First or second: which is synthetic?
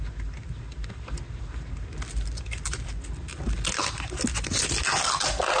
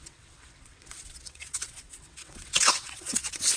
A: second